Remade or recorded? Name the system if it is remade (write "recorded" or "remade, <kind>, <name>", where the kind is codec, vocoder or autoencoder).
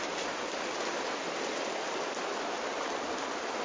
recorded